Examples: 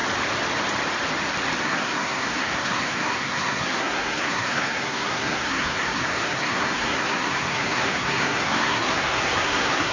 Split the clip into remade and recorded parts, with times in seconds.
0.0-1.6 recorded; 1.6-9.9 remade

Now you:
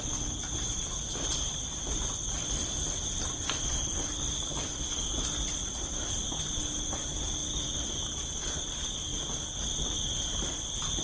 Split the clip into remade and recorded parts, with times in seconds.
0.0-11.0 recorded

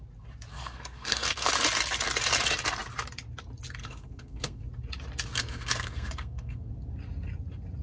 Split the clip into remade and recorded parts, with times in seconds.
0.0-0.5 recorded; 0.5-1.5 remade; 1.5-3.8 recorded; 3.8-4.6 remade; 4.6-5.3 recorded; 5.3-6.7 remade; 6.7-7.8 recorded

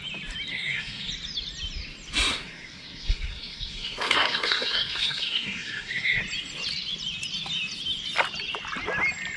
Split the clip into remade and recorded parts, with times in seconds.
0.0-0.5 recorded; 0.5-1.1 remade; 1.1-2.3 recorded; 2.3-6.2 remade; 6.2-9.4 recorded

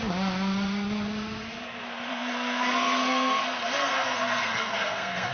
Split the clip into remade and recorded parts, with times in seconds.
0.0-2.1 recorded; 2.1-5.3 remade

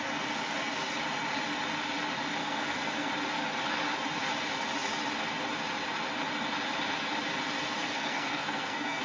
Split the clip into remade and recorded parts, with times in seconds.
0.0-2.4 recorded; 2.4-3.1 remade; 3.1-7.8 recorded; 7.8-9.0 remade